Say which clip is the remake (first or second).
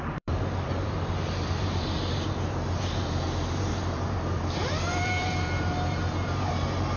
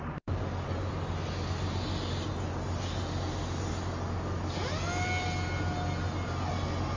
first